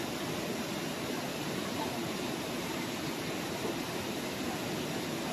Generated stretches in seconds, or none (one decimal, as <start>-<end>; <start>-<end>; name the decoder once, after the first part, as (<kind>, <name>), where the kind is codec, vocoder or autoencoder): 1.3-4.5 (vocoder, BigVGAN v2)